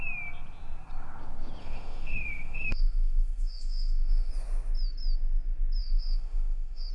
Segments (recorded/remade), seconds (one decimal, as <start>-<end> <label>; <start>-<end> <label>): 0.0-1.6 recorded; 1.6-4.3 remade; 4.3-5.8 recorded; 5.8-6.9 remade